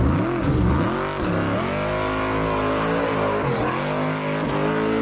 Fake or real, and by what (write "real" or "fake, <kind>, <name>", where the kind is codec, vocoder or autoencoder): real